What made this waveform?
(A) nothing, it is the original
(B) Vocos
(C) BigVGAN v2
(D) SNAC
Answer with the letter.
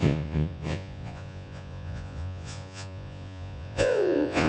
B